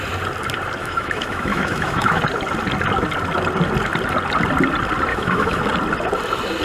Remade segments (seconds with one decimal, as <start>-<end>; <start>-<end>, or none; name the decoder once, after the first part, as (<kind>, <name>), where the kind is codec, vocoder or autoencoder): 0.8-2.2 (autoencoder, DAC-VAE); 5.1-5.6